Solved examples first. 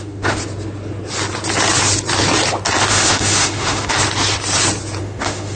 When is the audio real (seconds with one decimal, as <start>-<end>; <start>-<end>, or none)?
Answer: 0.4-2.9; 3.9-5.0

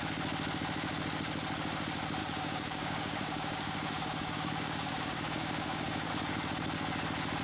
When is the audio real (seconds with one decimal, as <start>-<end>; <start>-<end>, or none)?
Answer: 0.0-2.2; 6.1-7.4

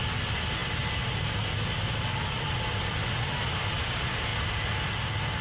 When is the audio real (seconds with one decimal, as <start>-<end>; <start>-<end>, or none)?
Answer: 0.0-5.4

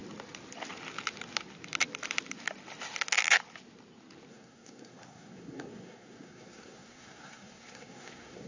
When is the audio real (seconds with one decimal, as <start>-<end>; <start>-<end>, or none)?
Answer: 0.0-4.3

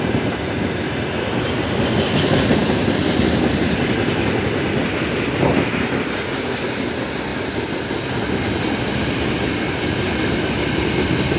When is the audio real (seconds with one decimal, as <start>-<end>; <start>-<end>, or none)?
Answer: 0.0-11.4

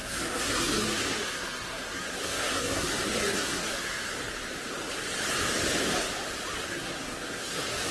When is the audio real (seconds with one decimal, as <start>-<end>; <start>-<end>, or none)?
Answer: 4.1-6.6

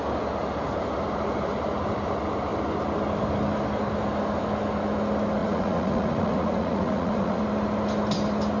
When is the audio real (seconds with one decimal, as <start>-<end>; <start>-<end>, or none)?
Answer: 0.0-5.4; 7.4-8.6

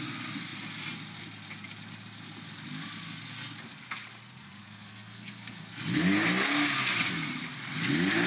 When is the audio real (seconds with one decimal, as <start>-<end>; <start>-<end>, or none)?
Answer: 0.0-4.6; 5.7-8.3